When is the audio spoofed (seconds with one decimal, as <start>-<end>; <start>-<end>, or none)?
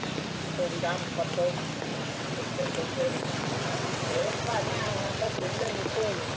1.9-5.7